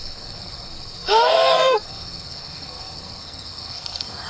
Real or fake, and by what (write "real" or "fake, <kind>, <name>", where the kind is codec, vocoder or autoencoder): fake, codec, SNAC